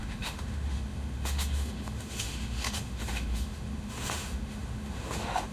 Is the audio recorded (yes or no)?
no